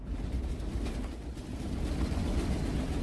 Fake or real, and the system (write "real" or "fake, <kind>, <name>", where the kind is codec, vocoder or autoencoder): real